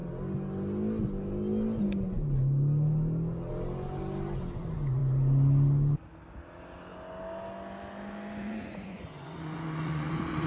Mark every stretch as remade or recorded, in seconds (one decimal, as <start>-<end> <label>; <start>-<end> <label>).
0.0-8.4 recorded; 8.4-10.5 remade